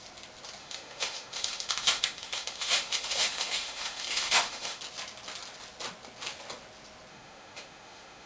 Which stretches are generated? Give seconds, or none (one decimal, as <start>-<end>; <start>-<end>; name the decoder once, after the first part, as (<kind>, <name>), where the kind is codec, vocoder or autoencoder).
0.6-4.8 (autoencoder, DAC-VAE); 7.1-8.3